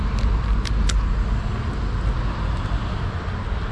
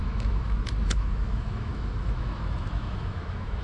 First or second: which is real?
first